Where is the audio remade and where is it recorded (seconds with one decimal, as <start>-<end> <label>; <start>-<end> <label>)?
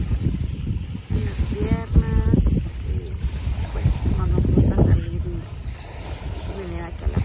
0.0-7.2 recorded